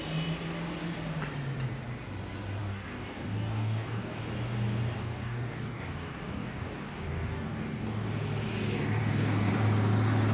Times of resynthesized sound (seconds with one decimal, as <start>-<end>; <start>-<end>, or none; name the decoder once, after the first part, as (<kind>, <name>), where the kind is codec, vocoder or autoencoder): 2.6-4.2 (codec, DAC); 5.0-8.1; 9.0-9.5

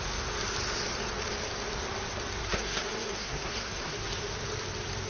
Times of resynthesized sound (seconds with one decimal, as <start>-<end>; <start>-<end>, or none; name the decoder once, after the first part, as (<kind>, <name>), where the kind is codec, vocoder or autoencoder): 2.4-4.1 (codec, SNAC)

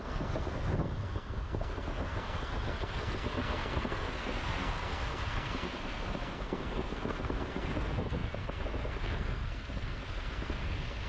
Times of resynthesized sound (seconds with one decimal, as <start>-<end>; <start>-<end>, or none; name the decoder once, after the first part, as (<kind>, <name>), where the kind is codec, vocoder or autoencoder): 0.0-11.1 (codec, SNAC)

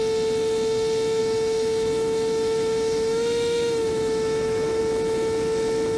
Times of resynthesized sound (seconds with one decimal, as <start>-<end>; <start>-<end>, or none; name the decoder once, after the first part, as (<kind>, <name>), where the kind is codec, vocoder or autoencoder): 1.2-4.8 (autoencoder, DAC-VAE)

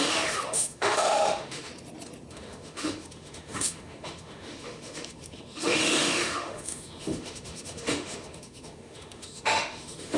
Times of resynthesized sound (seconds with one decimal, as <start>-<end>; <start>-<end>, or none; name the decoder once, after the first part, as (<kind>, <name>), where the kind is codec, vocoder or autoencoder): 0.0-1.7 (autoencoder, DAC-VAE); 2.3-10.2